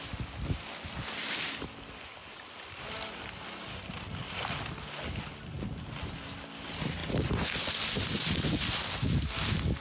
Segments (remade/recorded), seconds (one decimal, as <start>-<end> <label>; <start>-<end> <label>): 0.0-9.8 recorded